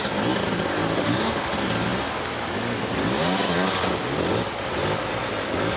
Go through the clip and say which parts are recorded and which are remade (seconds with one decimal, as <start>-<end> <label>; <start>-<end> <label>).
0.0-0.8 recorded; 0.8-1.5 remade; 1.5-5.8 recorded